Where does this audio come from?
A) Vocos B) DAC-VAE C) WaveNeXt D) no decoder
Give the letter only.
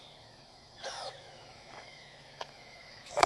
B